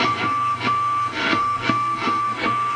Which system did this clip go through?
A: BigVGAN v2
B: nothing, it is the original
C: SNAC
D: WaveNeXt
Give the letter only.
C